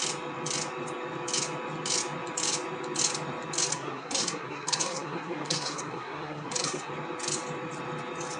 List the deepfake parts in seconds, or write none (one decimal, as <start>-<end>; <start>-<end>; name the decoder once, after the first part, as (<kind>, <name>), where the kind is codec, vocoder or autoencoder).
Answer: 3.7-6.9 (codec, SNAC)